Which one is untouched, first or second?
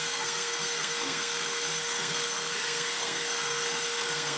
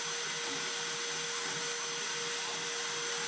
second